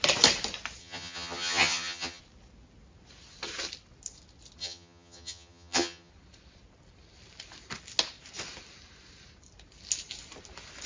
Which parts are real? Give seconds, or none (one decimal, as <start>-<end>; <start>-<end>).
0.0-0.8; 2.2-4.6; 6.1-10.9